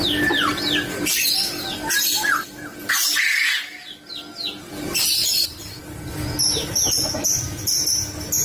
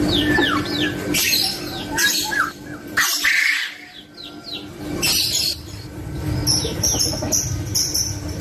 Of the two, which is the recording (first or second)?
first